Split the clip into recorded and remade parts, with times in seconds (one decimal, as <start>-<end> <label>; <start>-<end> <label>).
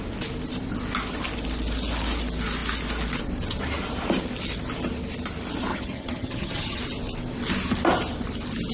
0.0-5.7 recorded; 5.7-6.8 remade; 6.8-8.7 recorded